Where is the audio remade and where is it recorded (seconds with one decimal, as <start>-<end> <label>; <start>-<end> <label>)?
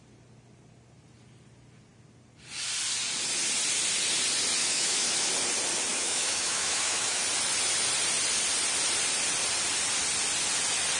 0.0-4.6 recorded; 4.6-5.3 remade; 5.3-5.9 recorded; 5.9-7.2 remade; 7.2-11.0 recorded